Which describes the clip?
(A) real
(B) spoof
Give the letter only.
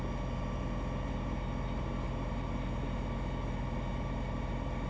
A